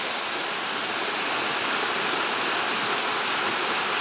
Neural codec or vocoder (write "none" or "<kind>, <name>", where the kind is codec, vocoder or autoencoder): none